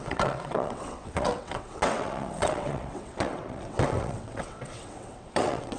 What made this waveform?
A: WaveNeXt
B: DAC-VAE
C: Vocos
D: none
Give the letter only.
A